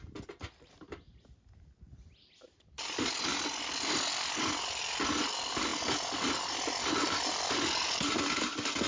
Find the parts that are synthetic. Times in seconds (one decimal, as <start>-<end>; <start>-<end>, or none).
none